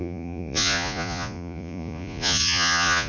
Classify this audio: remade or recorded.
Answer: remade